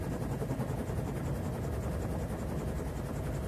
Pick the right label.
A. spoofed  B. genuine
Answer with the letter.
B